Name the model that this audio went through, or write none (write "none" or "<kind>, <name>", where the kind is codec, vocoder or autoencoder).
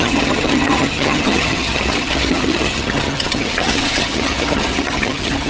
vocoder, HiFi-GAN